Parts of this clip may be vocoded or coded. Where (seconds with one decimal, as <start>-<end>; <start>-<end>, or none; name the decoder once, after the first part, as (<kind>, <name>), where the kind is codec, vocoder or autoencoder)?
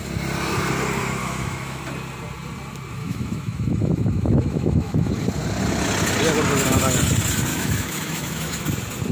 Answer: 1.2-1.8 (autoencoder, DAC-VAE); 3.0-5.1; 7.5-8.6